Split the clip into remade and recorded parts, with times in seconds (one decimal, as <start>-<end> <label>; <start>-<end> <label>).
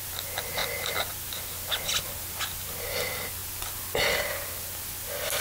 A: 0.0-5.4 recorded